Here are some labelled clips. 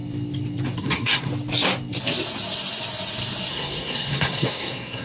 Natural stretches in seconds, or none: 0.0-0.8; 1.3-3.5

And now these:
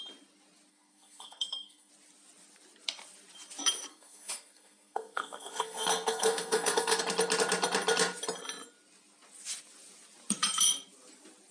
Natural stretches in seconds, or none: 0.0-0.7; 1.9-3.9; 7.0-11.5